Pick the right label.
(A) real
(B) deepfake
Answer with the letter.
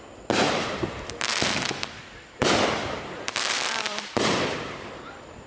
B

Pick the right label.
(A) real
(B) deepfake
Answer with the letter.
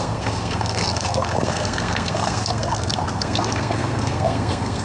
B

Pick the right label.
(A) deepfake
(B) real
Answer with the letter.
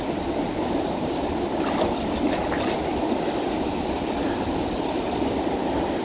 B